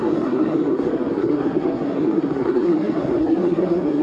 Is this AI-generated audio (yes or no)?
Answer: yes